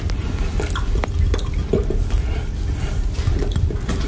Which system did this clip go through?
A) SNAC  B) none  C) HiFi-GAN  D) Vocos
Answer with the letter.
B